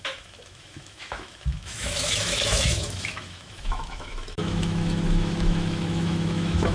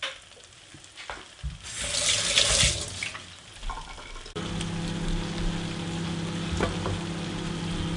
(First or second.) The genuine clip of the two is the second